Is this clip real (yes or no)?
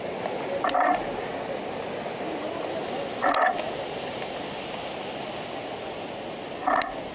yes